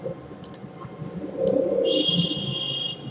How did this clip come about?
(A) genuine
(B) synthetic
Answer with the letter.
A